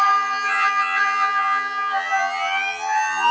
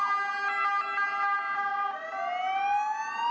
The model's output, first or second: first